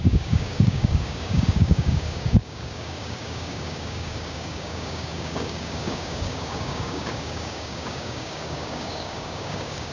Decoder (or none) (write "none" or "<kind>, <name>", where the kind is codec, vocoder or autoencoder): codec, DAC